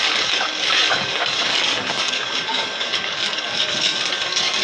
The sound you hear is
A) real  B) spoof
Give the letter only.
B